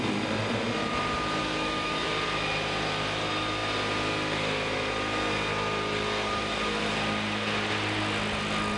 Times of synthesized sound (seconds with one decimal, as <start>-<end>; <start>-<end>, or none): 1.4-2.1